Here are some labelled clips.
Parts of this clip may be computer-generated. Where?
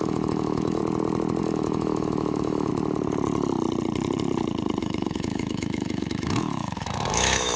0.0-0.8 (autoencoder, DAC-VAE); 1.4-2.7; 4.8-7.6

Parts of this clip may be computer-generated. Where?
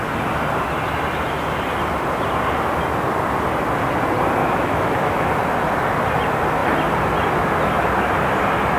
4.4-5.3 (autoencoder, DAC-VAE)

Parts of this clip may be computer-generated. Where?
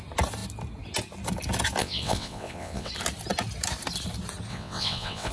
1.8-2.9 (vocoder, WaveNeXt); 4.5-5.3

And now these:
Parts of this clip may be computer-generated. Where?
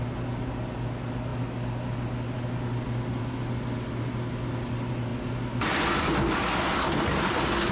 none